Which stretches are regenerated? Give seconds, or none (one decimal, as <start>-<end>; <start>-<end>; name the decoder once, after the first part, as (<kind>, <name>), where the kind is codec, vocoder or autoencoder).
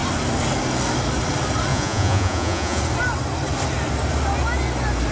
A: 1.7-2.8 (vocoder, Vocos)